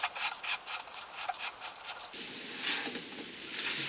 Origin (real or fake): real